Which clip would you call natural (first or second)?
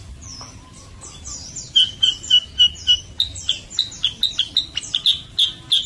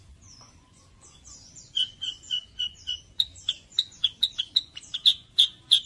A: first